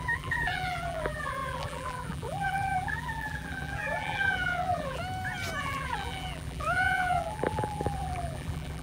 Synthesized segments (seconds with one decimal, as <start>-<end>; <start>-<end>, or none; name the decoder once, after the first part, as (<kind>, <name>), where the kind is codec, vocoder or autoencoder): 0.0-5.0 (vocoder, BigVGAN v2); 5.6-8.8

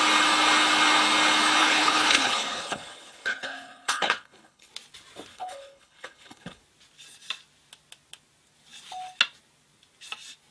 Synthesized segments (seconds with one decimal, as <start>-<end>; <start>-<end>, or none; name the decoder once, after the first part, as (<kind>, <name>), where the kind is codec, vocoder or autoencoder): 1.6-4.7 (codec, HILCodec); 5.3-6.6

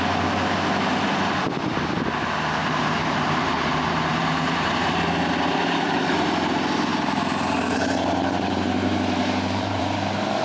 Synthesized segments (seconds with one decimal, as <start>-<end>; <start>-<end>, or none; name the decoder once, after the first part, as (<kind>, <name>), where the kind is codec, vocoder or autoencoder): 2.6-6.0 (vocoder, BigVGAN v2); 6.9-9.8

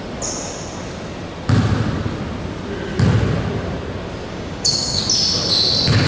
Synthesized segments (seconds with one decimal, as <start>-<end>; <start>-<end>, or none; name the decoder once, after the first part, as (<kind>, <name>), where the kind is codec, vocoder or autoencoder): 4.3-5.0 (codec, DAC)

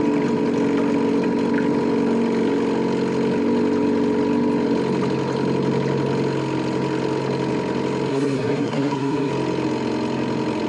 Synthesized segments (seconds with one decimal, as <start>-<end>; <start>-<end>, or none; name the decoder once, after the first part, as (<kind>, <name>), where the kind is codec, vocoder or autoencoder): 8.1-9.3 (codec, SNAC)

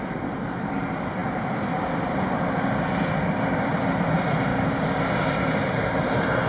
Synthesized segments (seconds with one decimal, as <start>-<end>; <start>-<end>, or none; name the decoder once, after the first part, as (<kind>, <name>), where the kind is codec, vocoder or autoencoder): 4.5-5.0 (codec, DAC)

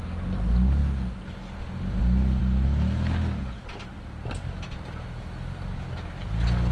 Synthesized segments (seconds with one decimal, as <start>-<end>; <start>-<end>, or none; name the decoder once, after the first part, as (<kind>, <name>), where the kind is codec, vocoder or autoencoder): none